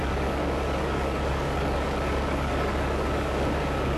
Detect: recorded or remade remade